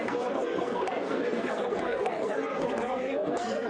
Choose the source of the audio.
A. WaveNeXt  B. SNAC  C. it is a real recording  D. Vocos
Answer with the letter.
B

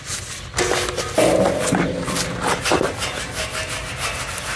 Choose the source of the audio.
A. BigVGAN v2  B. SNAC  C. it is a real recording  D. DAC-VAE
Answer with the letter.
C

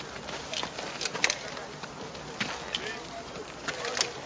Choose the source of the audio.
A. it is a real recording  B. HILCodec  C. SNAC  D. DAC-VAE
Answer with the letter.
A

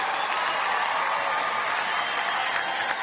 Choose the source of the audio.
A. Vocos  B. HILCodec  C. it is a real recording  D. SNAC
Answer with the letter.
C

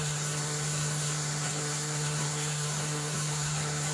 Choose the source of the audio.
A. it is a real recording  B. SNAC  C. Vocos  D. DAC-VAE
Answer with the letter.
B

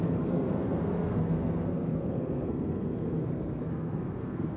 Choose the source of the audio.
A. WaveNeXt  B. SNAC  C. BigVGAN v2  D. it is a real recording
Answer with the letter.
B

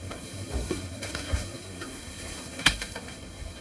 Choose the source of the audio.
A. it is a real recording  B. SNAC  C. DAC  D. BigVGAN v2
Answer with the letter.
B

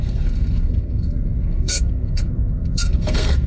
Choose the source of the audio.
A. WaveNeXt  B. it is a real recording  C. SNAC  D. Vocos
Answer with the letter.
C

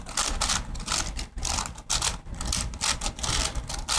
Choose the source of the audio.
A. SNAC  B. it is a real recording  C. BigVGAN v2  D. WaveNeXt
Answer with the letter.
B